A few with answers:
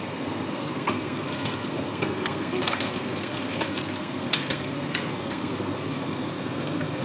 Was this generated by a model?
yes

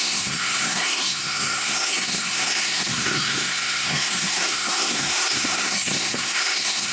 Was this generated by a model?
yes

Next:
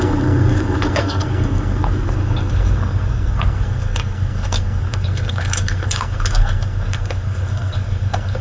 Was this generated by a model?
yes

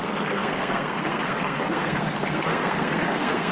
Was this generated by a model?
yes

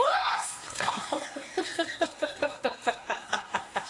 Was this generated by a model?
yes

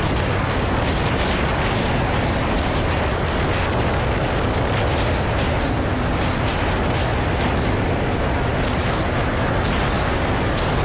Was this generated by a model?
no